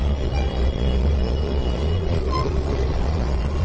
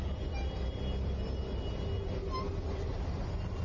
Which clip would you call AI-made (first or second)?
first